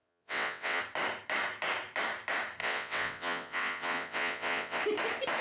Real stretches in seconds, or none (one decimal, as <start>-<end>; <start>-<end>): 0.8-2.6; 4.8-5.4